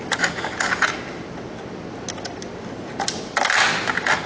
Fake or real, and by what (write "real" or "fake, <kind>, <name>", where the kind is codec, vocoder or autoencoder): real